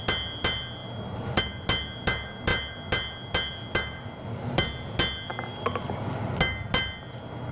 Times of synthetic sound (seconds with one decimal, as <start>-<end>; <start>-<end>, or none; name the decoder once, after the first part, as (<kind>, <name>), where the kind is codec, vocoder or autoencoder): none